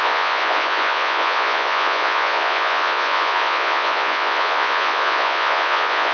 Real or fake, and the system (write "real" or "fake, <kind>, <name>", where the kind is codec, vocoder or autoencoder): fake, vocoder, Vocos